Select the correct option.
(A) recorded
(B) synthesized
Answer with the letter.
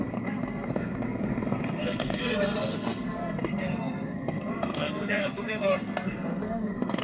B